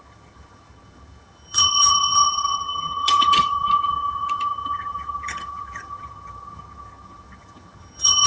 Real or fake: fake